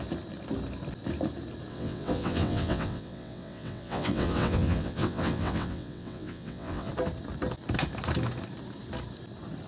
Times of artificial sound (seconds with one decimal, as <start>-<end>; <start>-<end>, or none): 1.7-6.9